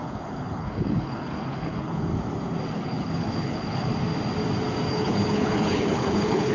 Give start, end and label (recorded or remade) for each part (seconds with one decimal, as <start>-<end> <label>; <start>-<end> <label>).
0.0-2.1 remade; 2.1-2.7 recorded; 2.7-3.9 remade; 3.9-4.9 recorded; 4.9-6.5 remade